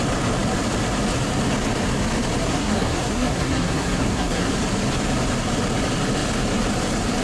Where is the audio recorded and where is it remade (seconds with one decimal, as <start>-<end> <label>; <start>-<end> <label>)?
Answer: 0.0-2.4 recorded; 2.4-4.5 remade; 4.5-7.2 recorded